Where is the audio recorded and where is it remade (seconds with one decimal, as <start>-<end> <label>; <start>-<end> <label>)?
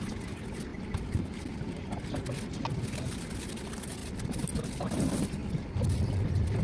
0.0-5.4 recorded; 5.4-6.6 remade